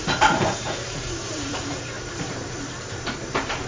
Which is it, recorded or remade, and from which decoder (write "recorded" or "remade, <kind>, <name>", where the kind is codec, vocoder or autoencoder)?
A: remade, vocoder, BigVGAN v2